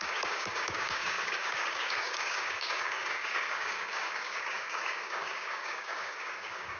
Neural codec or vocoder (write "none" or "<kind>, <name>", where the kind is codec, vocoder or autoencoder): codec, DAC